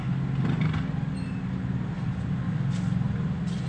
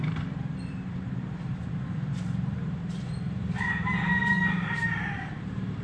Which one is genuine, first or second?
first